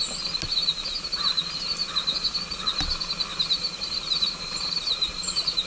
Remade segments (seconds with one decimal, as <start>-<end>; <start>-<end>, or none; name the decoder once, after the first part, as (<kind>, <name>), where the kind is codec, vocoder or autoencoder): 3.3-5.7 (vocoder, BigVGAN v2)

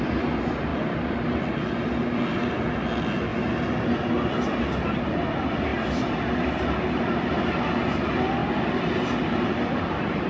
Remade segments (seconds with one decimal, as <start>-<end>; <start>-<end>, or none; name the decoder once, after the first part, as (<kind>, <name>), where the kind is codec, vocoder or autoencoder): 0.7-1.4 (vocoder, BigVGAN v2); 5.7-7.3; 8.4-10.3

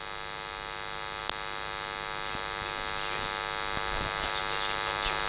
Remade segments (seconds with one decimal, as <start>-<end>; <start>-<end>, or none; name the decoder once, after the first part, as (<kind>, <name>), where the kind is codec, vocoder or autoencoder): none